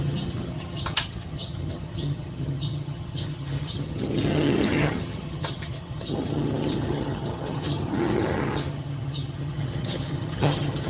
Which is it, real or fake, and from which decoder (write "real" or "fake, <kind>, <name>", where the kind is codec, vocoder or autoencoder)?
fake, vocoder, HiFi-GAN